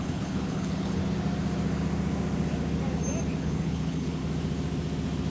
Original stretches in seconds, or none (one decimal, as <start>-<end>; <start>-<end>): 1.0-3.4; 4.2-5.3